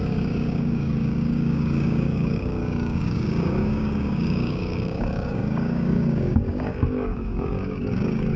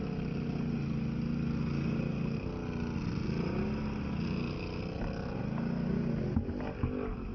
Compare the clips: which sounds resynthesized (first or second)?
first